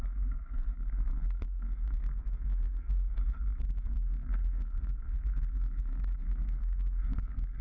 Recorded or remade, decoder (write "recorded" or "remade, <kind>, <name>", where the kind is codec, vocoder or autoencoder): remade, codec, SNAC